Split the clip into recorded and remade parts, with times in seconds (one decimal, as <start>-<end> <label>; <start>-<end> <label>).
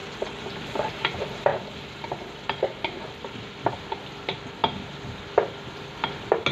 0.0-6.5 recorded